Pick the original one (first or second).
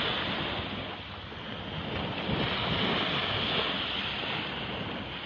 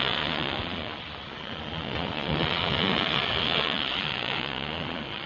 first